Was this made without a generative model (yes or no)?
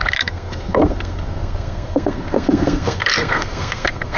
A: no